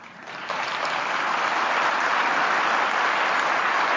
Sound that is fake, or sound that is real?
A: real